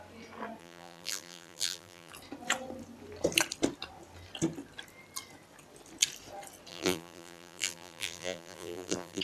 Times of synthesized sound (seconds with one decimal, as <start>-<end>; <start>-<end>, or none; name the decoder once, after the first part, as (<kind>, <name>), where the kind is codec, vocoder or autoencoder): 0.6-2.1 (vocoder, BigVGAN v2); 6.7-9.2